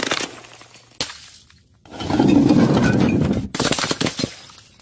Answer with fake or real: real